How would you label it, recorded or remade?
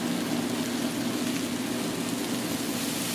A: recorded